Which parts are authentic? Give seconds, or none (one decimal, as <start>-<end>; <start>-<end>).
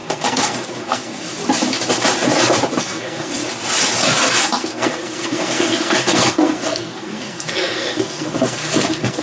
1.4-2.8; 3.4-4.2